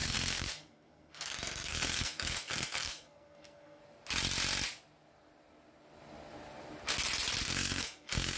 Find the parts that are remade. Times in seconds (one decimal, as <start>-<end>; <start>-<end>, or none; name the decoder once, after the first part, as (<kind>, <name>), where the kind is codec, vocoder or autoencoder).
0.0-3.8 (codec, SNAC); 7.4-8.4